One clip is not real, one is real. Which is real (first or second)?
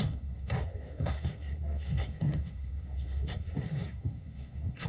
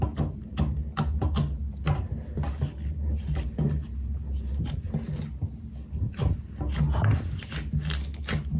second